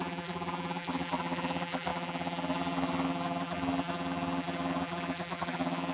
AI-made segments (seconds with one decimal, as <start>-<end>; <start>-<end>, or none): 0.0-5.9